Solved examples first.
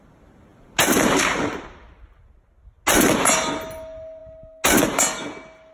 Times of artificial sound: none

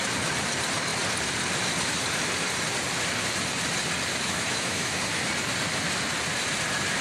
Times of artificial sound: 4.1-5.3 (autoencoder, DAC-VAE)

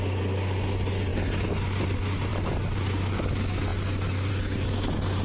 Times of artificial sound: none

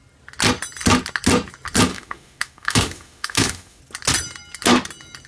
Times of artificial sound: 1.9-3.8 (autoencoder, DAC-VAE)